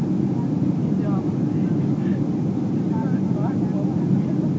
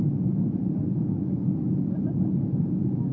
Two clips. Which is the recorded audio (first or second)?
first